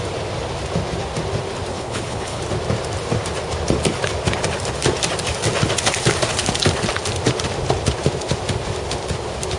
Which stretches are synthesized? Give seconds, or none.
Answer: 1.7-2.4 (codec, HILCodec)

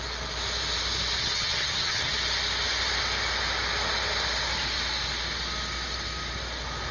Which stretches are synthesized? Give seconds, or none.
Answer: 1.2-2.1 (vocoder, HiFi-GAN)

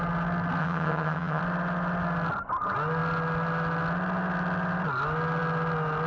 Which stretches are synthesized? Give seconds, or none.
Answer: 0.6-1.4 (vocoder, HiFi-GAN)

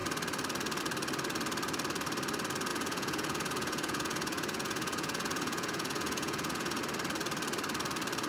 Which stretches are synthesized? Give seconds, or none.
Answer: 2.7-6.8 (vocoder, Vocos)

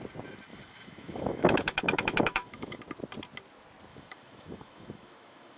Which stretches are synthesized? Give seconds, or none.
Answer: 0.5-2.8 (autoencoder, DAC-VAE); 3.9-5.6

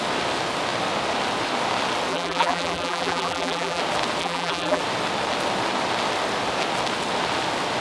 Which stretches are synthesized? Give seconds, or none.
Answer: 2.1-3.8 (vocoder, BigVGAN v2); 4.2-4.8

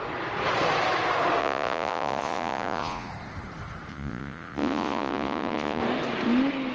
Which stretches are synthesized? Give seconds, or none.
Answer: 1.4-3.1 (vocoder, Vocos); 3.9-5.8

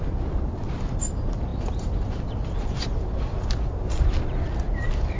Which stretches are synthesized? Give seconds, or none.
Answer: none